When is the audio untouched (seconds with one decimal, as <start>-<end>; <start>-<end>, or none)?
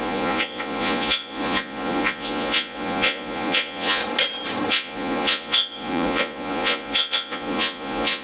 4.0-4.7